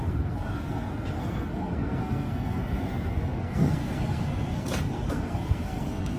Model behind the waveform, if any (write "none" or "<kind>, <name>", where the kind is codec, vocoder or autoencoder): codec, SNAC